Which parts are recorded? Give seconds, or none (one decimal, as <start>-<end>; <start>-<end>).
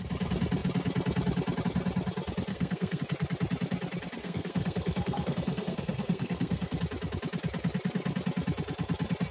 0.0-2.5; 3.0-4.2; 6.8-9.3